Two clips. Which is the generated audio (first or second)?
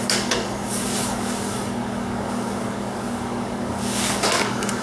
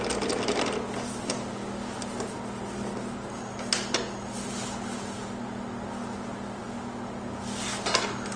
first